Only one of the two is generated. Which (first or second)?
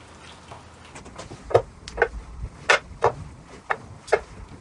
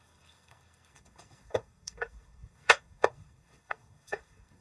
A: second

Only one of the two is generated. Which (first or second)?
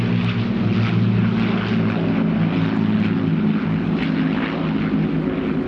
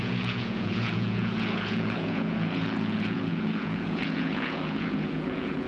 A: second